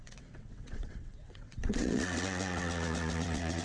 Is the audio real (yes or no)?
no